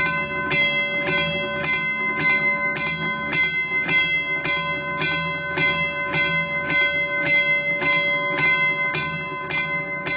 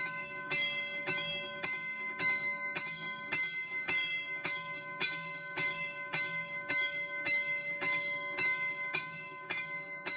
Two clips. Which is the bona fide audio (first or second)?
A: first